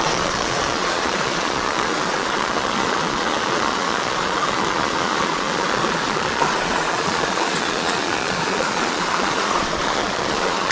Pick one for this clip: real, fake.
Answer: fake